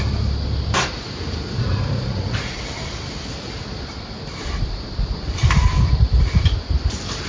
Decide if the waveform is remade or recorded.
remade